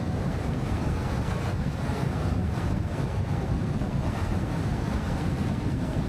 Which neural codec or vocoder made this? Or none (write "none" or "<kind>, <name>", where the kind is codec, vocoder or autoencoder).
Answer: codec, SNAC